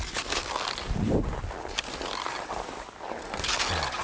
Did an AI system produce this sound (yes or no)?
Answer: no